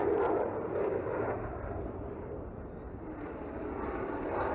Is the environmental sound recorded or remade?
recorded